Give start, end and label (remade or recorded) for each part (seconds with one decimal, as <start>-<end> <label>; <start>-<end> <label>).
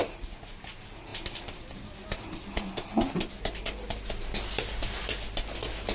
0.0-5.9 recorded